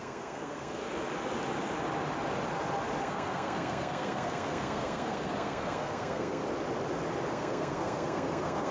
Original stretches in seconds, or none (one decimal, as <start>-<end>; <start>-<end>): 0.8-3.0; 6.4-7.3